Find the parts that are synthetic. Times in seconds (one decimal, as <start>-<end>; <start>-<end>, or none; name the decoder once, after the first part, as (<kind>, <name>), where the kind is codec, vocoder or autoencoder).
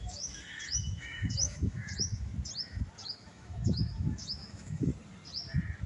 0.0-2.3 (autoencoder, DAC-VAE); 3.0-4.9